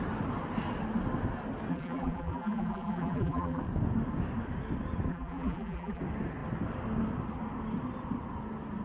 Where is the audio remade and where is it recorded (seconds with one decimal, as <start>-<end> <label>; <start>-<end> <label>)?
0.0-1.7 recorded; 1.7-3.6 remade; 3.6-5.1 recorded; 5.1-6.0 remade; 6.0-8.8 recorded